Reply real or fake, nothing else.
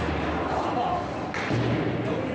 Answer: real